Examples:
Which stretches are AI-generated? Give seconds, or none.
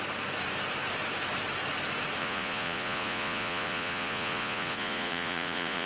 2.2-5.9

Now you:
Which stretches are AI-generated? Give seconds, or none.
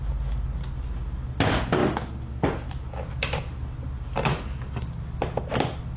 4.3-5.0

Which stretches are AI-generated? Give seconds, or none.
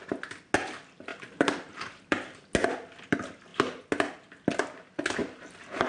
1.1-2.4; 5.2-5.9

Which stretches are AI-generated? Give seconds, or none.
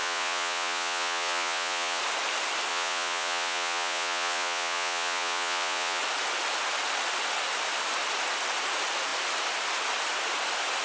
0.0-2.0; 2.7-6.0